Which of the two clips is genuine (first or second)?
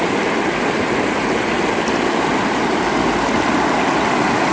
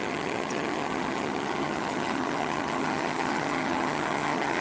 first